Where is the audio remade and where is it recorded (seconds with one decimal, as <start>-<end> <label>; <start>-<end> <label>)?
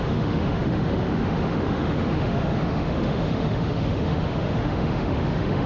0.0-5.7 remade